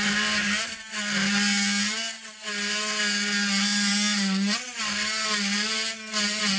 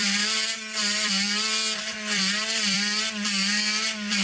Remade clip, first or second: second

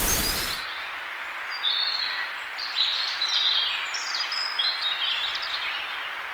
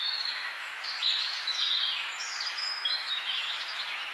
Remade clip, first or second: second